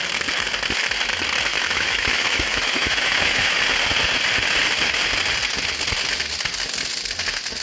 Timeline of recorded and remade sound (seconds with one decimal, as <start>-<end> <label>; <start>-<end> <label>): 0.0-1.5 recorded; 1.5-3.6 remade; 3.6-7.6 recorded